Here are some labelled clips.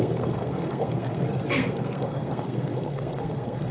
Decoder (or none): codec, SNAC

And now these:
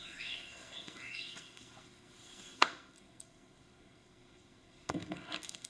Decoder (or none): codec, SNAC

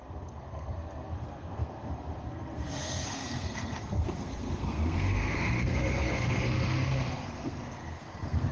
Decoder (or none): codec, SNAC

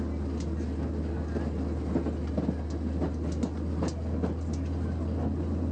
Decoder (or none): none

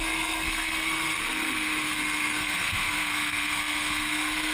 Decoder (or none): codec, SNAC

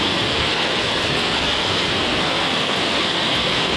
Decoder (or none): codec, SNAC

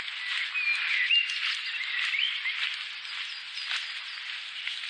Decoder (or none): none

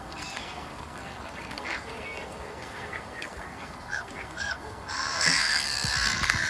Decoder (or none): codec, SNAC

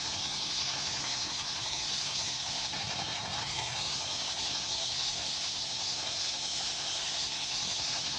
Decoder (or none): codec, SNAC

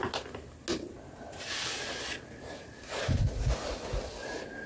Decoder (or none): none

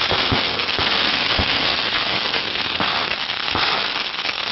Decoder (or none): codec, SNAC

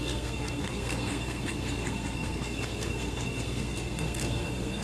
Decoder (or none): codec, SNAC